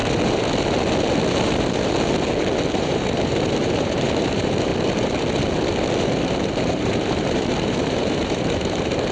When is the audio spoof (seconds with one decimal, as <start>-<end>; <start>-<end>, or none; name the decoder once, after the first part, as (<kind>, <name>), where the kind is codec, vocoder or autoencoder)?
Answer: 2.7-4.7 (vocoder, BigVGAN v2); 6.0-9.1